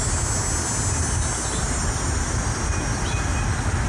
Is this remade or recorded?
recorded